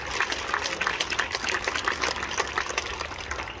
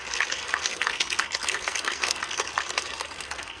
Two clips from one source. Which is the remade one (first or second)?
second